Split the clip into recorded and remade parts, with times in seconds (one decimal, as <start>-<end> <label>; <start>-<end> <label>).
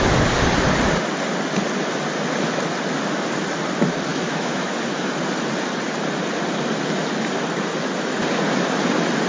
0.0-4.1 recorded; 4.1-5.1 remade; 5.1-9.3 recorded